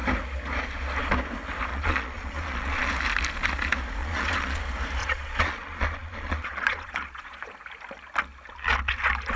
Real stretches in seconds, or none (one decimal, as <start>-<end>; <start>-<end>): 0.0-1.7; 2.9-4.0; 4.6-5.0; 7.5-9.4